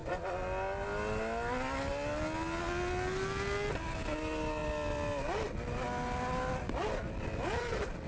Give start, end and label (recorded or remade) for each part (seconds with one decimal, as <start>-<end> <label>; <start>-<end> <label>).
0.0-8.1 recorded